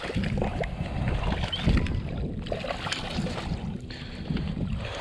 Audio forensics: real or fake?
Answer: real